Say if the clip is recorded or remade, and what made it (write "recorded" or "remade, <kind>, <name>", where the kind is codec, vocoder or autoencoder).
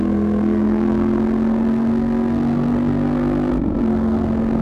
remade, codec, SNAC